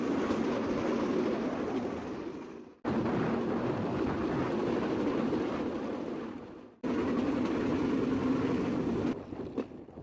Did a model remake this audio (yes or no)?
no